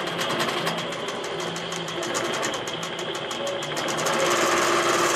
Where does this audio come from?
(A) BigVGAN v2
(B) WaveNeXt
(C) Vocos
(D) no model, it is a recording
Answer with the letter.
D